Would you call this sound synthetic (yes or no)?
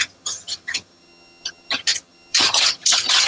yes